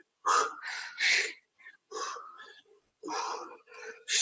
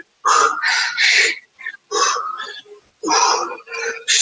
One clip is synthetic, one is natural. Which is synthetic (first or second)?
first